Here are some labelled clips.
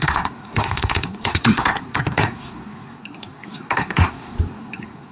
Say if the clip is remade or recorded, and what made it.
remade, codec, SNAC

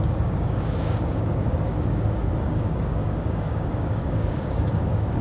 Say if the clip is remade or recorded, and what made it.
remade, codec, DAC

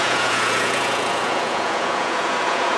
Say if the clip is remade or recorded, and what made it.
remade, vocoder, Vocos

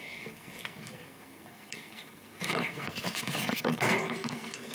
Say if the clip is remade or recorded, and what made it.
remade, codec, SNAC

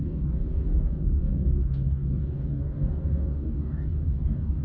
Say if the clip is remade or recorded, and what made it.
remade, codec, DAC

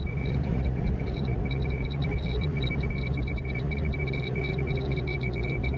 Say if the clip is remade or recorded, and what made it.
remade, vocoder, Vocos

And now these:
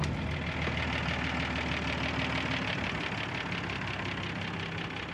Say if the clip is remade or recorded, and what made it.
recorded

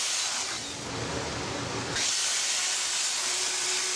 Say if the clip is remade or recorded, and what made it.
recorded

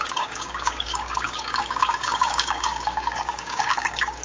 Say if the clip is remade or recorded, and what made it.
remade, codec, DAC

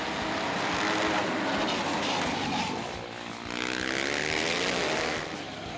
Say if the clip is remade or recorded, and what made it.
recorded